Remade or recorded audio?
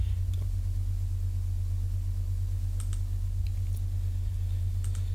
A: recorded